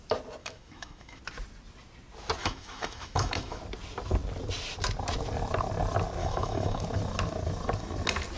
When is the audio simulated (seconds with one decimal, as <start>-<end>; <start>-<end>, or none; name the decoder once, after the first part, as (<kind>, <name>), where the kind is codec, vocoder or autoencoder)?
0.4-1.2 (autoencoder, DAC-VAE); 2.4-3.6; 6.2-6.8